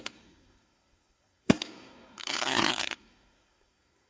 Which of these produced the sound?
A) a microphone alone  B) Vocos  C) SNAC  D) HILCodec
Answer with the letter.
C